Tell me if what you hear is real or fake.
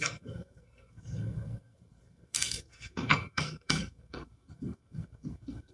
fake